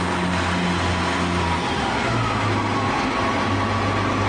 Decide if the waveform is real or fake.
real